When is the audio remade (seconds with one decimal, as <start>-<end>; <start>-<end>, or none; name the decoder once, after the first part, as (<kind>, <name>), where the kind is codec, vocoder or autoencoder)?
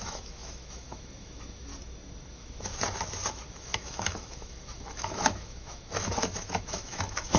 0.0-1.7 (autoencoder, DAC-VAE); 2.3-2.7; 3.3-7.4